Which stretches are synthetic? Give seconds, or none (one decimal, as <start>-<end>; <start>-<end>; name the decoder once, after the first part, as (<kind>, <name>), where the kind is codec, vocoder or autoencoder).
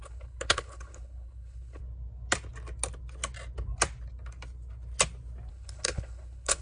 0.0-1.8 (codec, HILCodec); 5.5-6.6